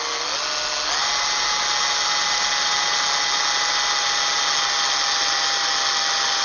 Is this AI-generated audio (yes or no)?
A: no